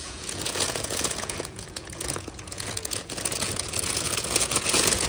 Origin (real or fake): fake